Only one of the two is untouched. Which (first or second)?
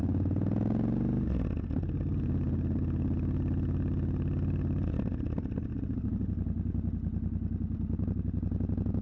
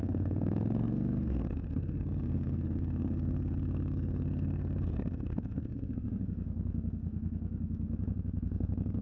first